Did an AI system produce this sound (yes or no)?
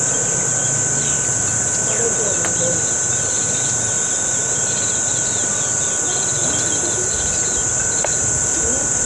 no